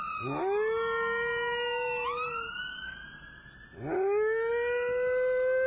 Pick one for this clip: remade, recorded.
recorded